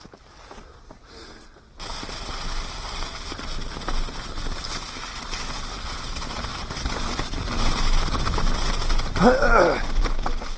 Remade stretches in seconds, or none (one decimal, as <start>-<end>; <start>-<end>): none